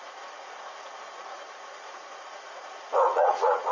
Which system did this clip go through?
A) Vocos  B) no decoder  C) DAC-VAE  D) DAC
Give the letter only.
A